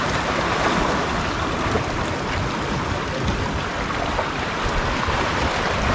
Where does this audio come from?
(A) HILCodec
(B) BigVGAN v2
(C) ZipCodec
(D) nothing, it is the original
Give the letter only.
D